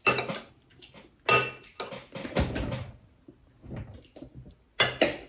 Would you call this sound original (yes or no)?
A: yes